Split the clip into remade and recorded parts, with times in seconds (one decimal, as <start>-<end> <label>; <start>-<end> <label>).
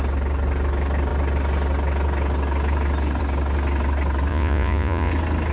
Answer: 0.0-4.3 recorded; 4.3-5.1 remade; 5.1-5.5 recorded